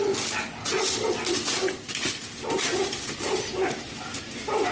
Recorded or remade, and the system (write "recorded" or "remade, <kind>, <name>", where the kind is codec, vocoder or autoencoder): recorded